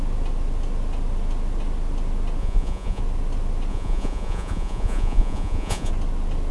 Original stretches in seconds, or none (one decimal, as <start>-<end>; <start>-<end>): 0.0-2.4; 3.0-3.7; 5.9-6.5